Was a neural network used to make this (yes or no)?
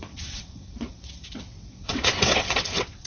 yes